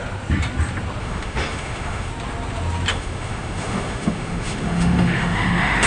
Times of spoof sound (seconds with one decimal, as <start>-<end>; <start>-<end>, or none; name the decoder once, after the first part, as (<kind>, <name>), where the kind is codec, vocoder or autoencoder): 1.0-2.1 (autoencoder, DAC-VAE); 2.9-5.9